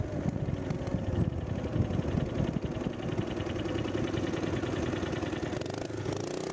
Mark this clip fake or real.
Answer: real